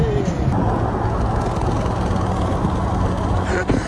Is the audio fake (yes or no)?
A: no